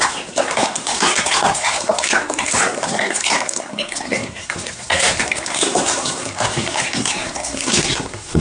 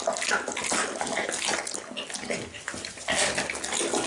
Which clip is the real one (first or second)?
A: second